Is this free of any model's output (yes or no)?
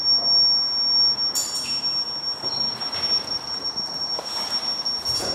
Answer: yes